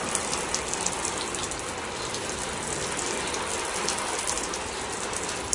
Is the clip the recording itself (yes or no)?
yes